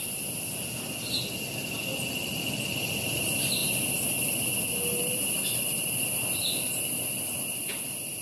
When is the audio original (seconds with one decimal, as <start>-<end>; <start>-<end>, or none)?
0.0-8.2